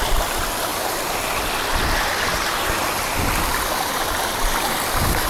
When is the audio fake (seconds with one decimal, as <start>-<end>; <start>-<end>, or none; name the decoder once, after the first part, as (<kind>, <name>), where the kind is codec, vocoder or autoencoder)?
none

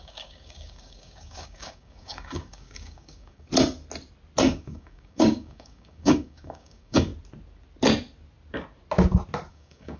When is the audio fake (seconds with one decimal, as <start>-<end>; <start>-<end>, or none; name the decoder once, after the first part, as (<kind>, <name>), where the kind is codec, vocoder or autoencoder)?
0.0-3.5 (codec, DAC); 4.4-7.1; 9.5-10.0

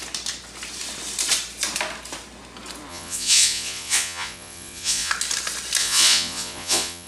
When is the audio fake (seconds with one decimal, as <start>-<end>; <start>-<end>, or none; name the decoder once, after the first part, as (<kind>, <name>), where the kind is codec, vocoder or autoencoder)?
2.9-5.1 (vocoder, Vocos); 5.8-7.1

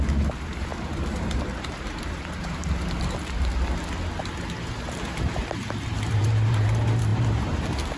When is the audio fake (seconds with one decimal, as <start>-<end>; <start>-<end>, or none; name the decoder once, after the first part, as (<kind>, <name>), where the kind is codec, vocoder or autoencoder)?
0.0-3.2 (vocoder, BigVGAN v2); 4.2-8.0

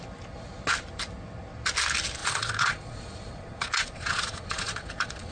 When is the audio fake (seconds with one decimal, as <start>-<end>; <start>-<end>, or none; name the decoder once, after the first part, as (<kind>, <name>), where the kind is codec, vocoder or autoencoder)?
2.2-5.3 (vocoder, Vocos)